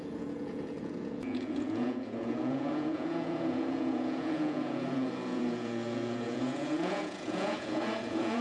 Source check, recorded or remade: remade